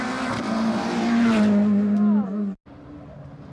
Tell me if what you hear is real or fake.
real